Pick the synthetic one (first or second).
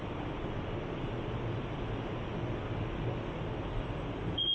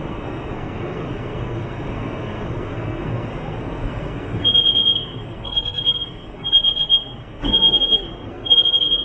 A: second